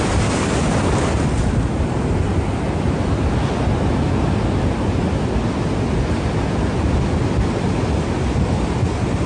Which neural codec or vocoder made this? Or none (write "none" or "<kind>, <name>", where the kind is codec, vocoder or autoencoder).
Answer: none